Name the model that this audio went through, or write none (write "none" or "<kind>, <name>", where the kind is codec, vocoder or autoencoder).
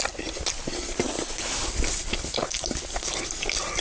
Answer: none